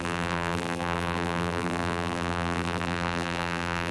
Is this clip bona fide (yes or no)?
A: no